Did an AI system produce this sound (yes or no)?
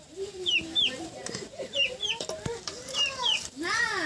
yes